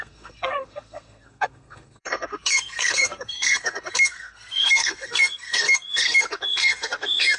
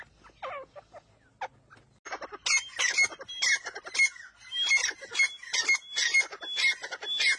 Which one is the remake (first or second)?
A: first